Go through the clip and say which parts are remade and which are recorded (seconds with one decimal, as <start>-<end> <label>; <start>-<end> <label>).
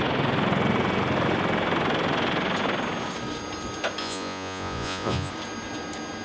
0.0-4.0 recorded; 4.0-5.3 remade; 5.3-6.2 recorded